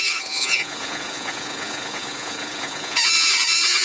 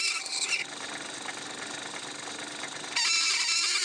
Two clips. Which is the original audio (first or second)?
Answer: second